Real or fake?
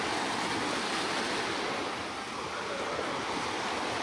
real